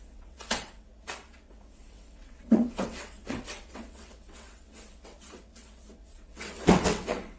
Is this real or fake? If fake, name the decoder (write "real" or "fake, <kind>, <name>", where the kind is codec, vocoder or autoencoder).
fake, vocoder, WaveNeXt